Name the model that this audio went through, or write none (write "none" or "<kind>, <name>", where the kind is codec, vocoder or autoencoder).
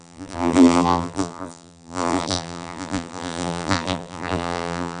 vocoder, BigVGAN v2